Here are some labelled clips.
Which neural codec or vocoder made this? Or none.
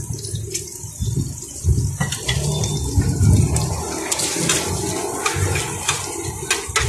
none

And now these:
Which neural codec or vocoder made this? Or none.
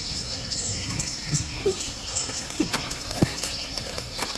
codec, SNAC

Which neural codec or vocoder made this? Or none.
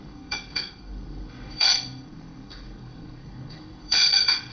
codec, SNAC